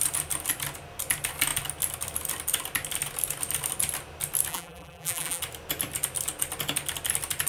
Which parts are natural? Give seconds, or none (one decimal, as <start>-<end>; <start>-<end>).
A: 0.0-4.5; 5.4-7.5